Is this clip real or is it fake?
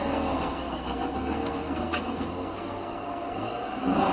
fake